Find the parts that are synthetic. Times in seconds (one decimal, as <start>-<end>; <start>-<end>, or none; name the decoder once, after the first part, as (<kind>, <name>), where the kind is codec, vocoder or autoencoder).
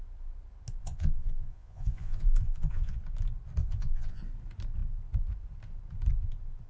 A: 0.8-3.0 (vocoder, Vocos); 3.6-4.2